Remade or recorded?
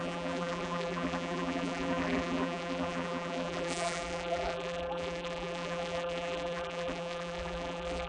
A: remade